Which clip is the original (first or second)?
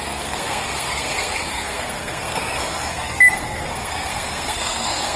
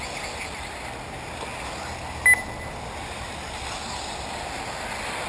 second